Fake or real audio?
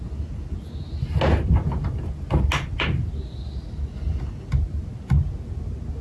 real